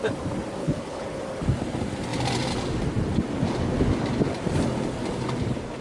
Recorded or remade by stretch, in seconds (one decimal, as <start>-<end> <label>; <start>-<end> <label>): 0.0-0.6 recorded; 0.6-1.2 remade; 1.2-5.8 recorded